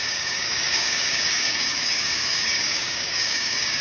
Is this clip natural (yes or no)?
no